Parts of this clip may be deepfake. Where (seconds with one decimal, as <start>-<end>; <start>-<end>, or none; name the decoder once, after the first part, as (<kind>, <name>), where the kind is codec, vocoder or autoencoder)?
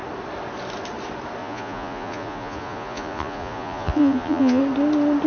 1.4-4.6 (vocoder, Vocos)